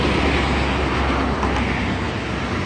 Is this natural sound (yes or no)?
yes